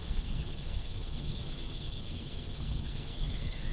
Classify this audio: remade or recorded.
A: remade